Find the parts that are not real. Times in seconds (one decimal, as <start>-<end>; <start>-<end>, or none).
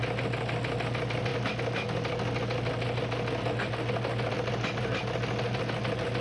none